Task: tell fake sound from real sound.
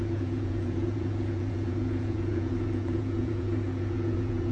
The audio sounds fake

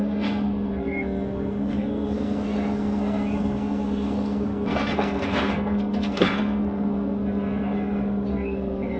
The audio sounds fake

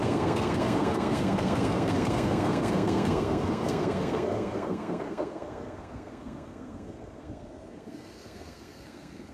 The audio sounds fake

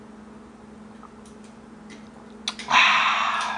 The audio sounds real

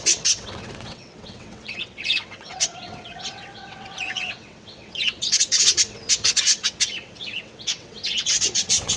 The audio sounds fake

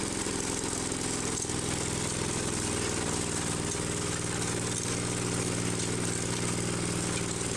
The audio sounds real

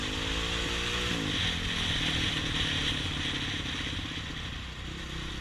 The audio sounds real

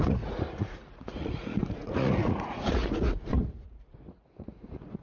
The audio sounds fake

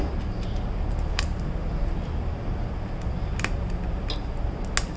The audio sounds real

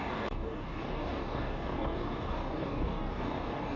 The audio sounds fake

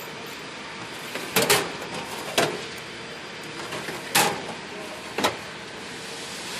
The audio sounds real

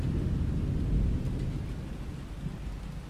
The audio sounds real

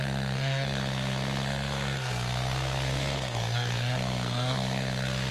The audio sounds fake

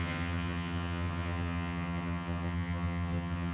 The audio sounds fake